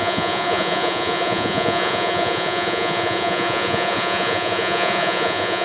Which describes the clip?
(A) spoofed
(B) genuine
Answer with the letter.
A